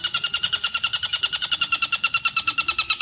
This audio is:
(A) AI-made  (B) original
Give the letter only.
B